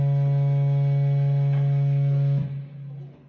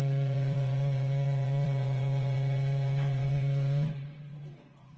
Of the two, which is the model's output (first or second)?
second